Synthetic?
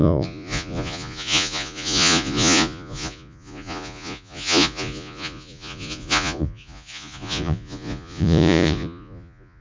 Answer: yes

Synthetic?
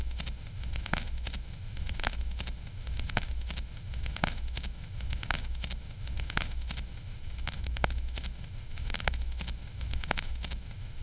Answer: yes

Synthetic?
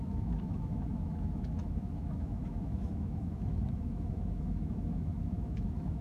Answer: yes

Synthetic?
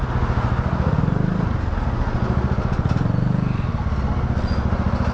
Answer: no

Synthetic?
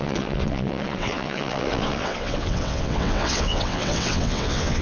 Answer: yes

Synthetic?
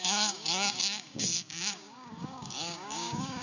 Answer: yes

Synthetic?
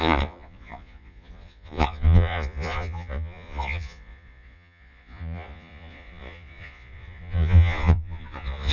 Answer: yes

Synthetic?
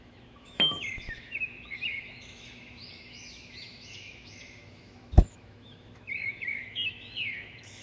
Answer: yes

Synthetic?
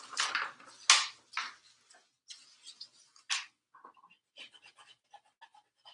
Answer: no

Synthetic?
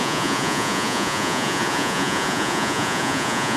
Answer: yes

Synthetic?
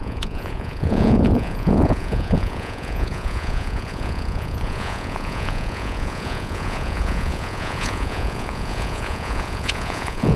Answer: yes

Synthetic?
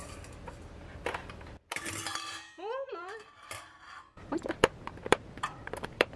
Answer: yes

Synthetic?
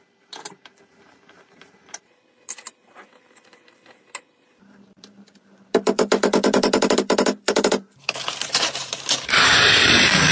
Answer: yes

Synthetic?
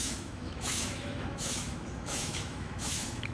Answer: yes